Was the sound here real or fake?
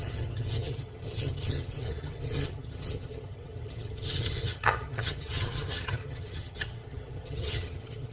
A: fake